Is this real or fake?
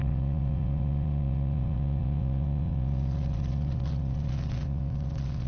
fake